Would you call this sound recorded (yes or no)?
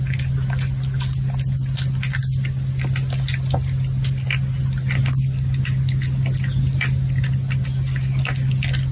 yes